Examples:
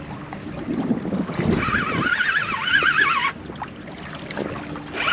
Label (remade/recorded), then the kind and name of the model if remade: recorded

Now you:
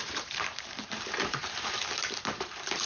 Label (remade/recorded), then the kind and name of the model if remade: remade, vocoder, BigVGAN v2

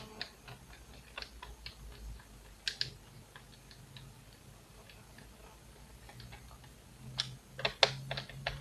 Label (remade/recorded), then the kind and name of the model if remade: recorded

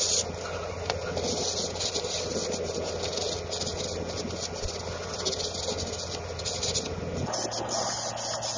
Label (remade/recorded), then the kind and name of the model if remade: remade, vocoder, BigVGAN v2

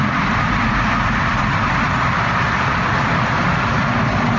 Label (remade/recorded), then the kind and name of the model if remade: remade, vocoder, BigVGAN v2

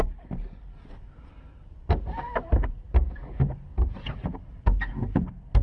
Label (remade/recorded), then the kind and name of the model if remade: recorded